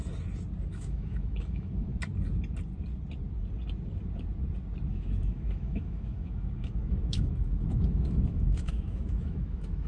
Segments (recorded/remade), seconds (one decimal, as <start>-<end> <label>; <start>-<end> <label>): 0.0-0.7 recorded; 0.7-1.9 remade; 1.9-4.9 recorded; 4.9-9.9 remade